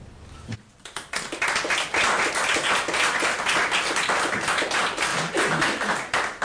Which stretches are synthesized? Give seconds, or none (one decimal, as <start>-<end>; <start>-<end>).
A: none